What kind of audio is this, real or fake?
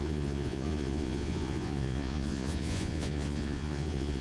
fake